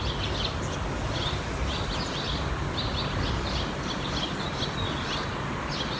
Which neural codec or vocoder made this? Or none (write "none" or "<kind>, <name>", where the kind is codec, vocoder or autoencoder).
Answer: none